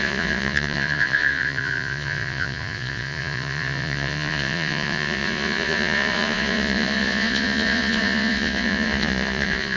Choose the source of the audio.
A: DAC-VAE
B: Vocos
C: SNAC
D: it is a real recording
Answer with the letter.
B